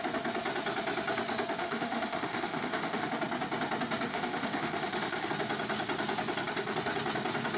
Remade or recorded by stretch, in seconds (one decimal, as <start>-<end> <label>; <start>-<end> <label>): 0.0-1.6 recorded; 1.6-3.1 remade; 3.1-4.1 recorded; 4.1-5.3 remade; 5.3-7.6 recorded